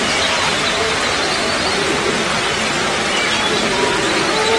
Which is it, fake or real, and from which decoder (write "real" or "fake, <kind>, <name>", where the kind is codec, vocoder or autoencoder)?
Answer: real